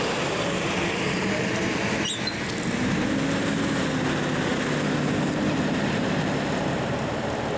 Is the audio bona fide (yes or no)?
yes